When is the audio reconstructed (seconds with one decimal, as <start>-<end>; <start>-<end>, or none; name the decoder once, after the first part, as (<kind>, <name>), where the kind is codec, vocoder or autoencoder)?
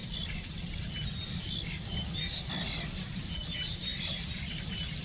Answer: 3.0-3.9 (vocoder, BigVGAN v2); 4.6-5.0